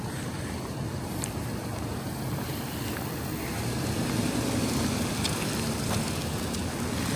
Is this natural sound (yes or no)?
yes